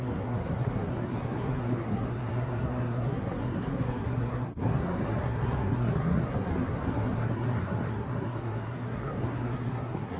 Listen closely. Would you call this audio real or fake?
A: fake